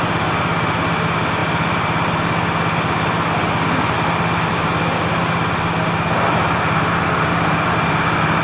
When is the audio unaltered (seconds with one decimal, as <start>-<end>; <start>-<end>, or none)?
0.0-8.4